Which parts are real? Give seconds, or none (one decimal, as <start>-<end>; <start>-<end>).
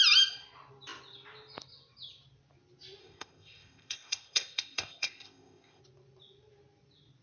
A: 0.0-3.0; 5.8-7.2